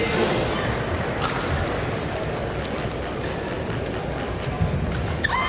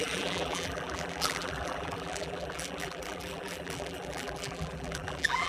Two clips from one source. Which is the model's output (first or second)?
second